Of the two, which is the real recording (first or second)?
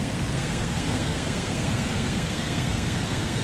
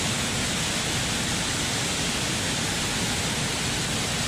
second